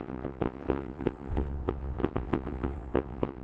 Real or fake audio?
fake